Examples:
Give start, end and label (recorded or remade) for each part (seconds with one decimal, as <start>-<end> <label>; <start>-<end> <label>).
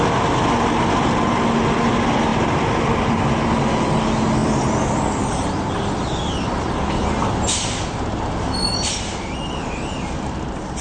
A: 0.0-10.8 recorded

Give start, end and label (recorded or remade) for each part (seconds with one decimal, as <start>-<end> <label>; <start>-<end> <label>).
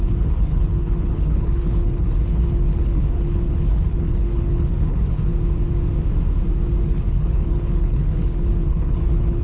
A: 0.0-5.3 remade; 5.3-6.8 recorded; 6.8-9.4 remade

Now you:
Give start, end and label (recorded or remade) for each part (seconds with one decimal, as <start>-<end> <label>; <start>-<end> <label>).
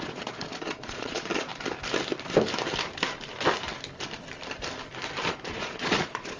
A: 0.0-1.5 remade; 1.5-5.3 recorded; 5.3-6.4 remade